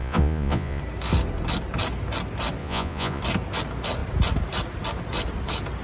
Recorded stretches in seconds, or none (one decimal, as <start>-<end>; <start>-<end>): 0.8-2.6; 3.2-5.8